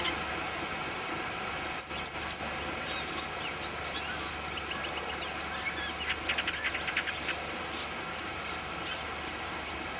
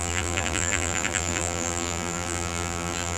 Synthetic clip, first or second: second